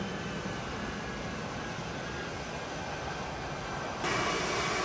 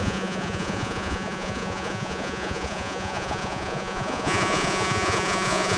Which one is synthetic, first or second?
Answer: second